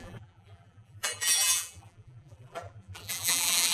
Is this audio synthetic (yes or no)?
yes